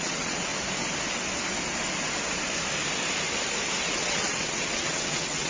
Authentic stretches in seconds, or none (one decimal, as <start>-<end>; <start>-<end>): 0.5-3.8